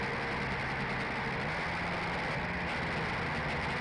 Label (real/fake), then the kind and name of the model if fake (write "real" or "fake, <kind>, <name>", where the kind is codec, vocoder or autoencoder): real